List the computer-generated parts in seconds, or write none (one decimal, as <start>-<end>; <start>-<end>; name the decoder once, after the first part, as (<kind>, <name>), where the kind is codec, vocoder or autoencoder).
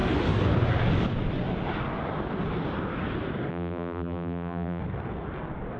3.5-4.8 (vocoder, BigVGAN v2)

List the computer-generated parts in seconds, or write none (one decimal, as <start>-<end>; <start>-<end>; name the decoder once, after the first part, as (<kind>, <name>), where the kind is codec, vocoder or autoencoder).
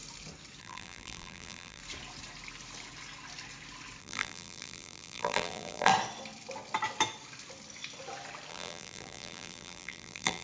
0.6-1.8 (vocoder, BigVGAN v2); 4.0-5.9; 8.5-10.4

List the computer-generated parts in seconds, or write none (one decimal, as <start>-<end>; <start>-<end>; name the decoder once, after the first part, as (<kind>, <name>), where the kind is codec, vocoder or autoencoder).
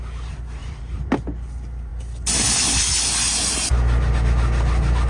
0.6-1.1 (vocoder, BigVGAN v2)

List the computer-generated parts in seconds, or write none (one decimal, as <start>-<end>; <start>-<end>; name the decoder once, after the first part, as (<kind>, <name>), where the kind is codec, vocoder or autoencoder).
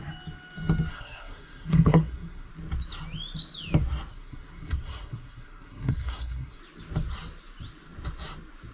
0.9-2.5 (codec, SNAC); 4.1-6.6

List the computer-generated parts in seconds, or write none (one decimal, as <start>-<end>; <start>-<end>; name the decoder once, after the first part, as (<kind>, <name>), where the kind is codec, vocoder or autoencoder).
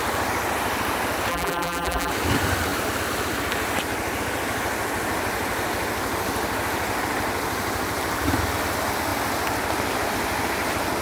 1.3-2.1 (vocoder, BigVGAN v2)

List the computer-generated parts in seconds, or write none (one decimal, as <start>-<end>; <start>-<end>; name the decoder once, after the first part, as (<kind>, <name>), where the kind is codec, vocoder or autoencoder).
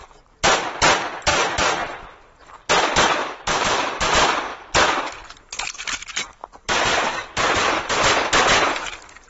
1.3-2.7 (vocoder, BigVGAN v2); 3.2-4.1; 6.4-8.0